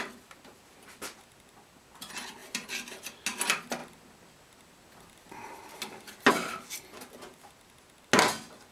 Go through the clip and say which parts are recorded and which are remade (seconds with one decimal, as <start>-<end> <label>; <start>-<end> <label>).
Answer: 0.0-8.7 recorded